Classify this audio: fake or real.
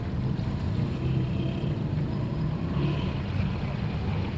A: real